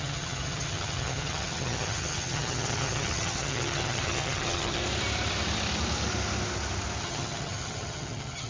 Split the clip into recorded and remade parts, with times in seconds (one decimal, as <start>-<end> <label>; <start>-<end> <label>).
0.0-4.8 remade; 4.8-7.0 recorded; 7.0-8.5 remade

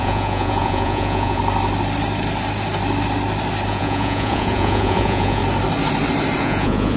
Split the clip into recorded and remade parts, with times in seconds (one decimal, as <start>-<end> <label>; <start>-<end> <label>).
0.0-1.4 remade; 1.4-3.7 recorded; 3.7-5.4 remade; 5.4-6.4 recorded; 6.4-7.0 remade

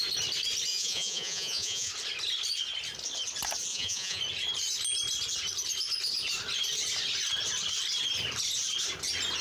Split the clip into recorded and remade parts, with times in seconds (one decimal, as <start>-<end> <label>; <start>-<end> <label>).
0.0-0.7 recorded; 0.7-1.9 remade; 1.9-3.7 recorded; 3.7-4.2 remade; 4.2-9.4 recorded

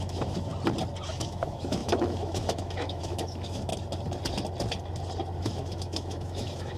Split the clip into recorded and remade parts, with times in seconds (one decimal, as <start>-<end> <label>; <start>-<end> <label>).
0.0-0.5 remade; 0.5-1.1 recorded; 1.1-3.7 remade; 3.7-5.4 recorded; 5.4-6.8 remade

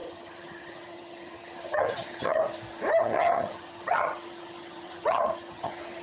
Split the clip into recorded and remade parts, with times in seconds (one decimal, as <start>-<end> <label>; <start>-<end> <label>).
0.0-2.4 remade; 2.4-3.0 recorded; 3.0-6.0 remade

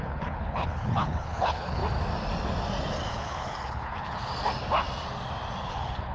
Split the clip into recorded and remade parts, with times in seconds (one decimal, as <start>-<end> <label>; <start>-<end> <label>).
0.0-1.8 remade; 1.8-3.1 recorded; 3.1-4.3 remade; 4.3-5.6 recorded; 5.6-6.1 remade